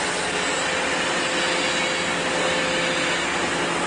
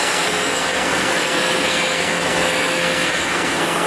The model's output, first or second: second